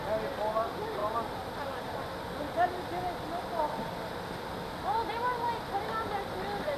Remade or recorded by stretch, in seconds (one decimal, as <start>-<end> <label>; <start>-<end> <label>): 0.0-6.8 recorded